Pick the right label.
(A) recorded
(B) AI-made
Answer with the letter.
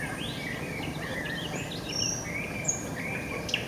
A